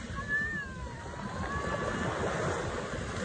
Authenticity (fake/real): real